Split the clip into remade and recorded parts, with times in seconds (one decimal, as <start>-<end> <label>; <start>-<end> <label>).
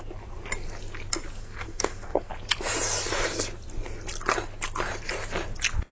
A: 0.0-1.4 recorded; 1.4-2.3 remade; 2.3-5.9 recorded